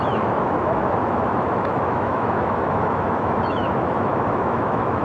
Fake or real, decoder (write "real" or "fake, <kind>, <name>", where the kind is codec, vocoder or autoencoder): fake, autoencoder, DAC-VAE